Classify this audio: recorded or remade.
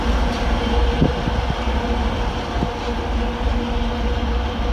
recorded